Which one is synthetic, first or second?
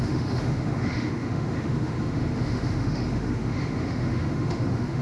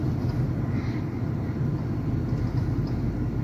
first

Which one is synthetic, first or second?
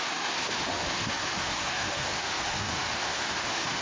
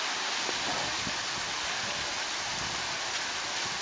first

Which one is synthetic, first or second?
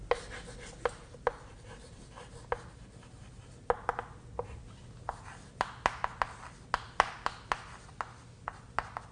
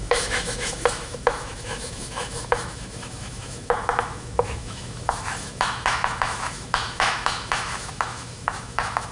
second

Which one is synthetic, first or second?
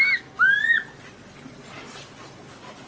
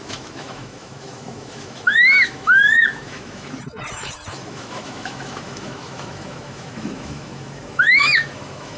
second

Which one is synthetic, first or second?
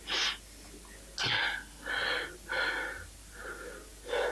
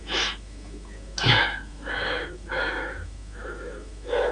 second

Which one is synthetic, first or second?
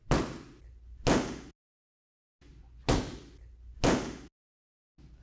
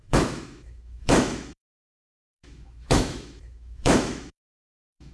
second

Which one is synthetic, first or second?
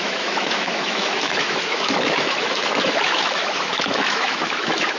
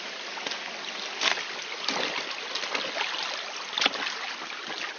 first